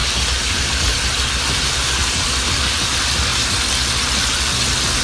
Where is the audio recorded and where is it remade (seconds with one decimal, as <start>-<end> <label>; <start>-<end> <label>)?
0.0-0.5 recorded; 0.5-0.9 remade; 0.9-1.7 recorded; 1.7-3.3 remade; 3.3-5.0 recorded